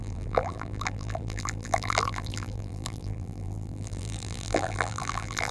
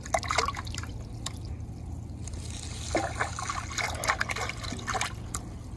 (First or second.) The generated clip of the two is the first